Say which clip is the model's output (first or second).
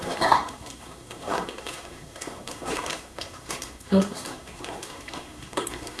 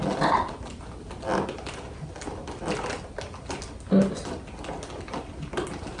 first